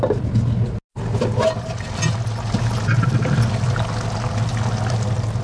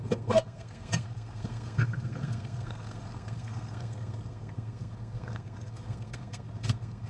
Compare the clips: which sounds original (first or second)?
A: first